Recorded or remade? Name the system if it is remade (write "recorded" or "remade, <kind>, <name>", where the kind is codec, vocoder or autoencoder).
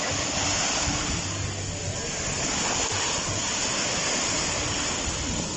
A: recorded